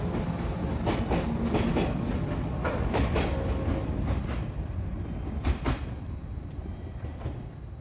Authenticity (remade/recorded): recorded